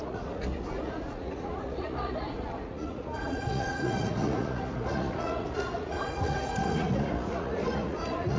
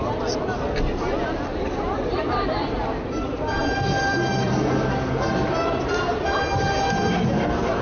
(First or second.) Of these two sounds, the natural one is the second